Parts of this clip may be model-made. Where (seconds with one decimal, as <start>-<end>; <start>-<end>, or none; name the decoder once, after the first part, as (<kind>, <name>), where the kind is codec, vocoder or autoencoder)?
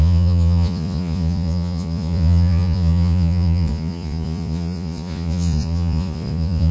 0.0-6.7 (vocoder, Vocos)